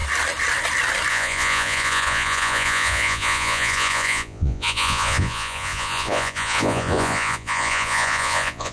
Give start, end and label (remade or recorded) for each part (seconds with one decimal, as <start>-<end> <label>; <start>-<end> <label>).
0.0-1.1 recorded; 1.1-8.7 remade